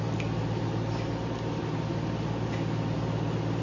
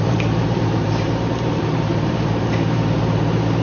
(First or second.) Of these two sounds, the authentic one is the first